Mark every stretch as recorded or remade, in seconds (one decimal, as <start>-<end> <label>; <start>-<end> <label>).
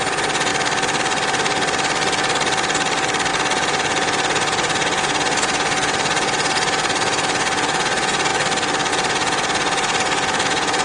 0.0-0.5 remade; 0.5-3.3 recorded; 3.3-8.3 remade; 8.3-8.9 recorded; 8.9-10.8 remade